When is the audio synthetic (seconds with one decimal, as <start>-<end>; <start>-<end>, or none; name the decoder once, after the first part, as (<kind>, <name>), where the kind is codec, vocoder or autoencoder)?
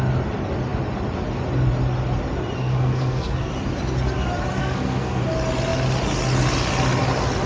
2.6-3.5 (codec, SNAC); 4.6-5.2